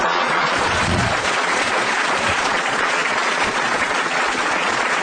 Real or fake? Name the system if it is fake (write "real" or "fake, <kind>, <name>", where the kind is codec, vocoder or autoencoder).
fake, vocoder, Vocos